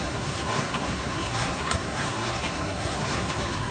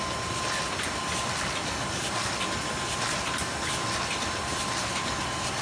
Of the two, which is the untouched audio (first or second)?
second